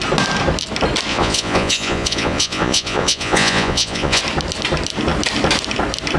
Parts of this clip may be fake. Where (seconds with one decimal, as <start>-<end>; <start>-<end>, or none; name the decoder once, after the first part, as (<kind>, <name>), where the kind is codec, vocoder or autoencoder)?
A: 1.1-4.2 (vocoder, Vocos)